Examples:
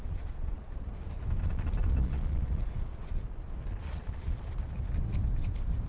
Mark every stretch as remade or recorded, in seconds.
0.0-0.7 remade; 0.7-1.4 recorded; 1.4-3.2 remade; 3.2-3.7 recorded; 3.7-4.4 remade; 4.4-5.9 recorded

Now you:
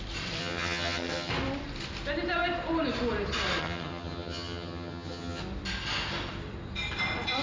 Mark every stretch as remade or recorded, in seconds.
0.0-0.4 recorded; 0.4-1.3 remade; 1.3-3.6 recorded; 3.6-5.4 remade; 5.4-7.4 recorded

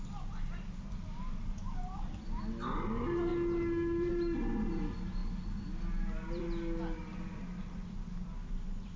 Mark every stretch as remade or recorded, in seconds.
0.0-9.0 recorded